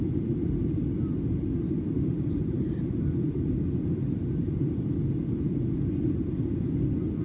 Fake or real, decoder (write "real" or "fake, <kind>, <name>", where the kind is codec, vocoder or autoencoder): fake, vocoder, BigVGAN v2